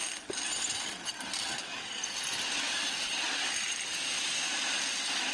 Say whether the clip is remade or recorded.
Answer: recorded